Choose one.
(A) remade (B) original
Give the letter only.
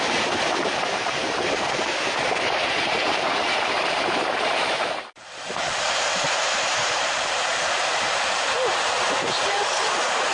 A